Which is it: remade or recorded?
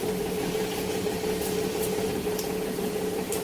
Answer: remade